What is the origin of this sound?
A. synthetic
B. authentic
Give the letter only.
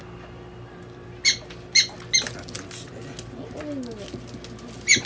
B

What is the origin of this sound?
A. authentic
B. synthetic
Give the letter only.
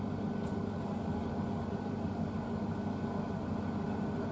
A